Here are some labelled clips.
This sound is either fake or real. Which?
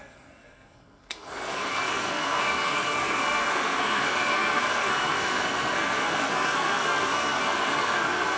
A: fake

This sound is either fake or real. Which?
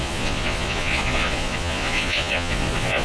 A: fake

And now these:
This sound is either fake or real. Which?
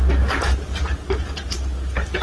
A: real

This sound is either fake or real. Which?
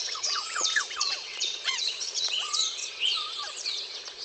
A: fake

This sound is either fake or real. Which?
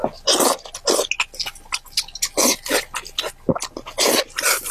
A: real